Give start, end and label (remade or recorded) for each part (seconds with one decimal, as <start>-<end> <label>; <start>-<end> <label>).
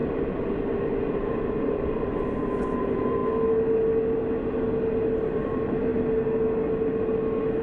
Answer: 0.0-1.2 recorded; 1.2-3.2 remade; 3.2-5.3 recorded; 5.3-5.9 remade; 5.9-7.6 recorded